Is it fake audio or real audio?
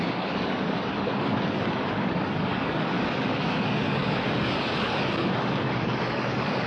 fake